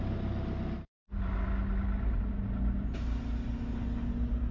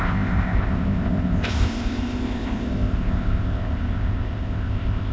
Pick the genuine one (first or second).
first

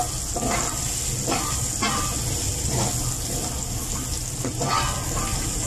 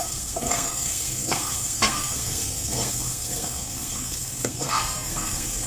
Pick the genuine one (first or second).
first